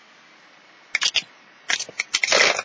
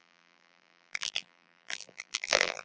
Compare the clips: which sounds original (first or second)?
first